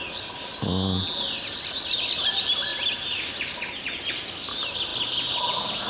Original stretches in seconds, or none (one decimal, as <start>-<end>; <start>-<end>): 0.0-5.9